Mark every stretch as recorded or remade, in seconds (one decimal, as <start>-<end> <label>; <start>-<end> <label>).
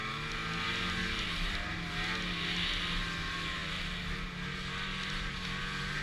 0.0-6.0 recorded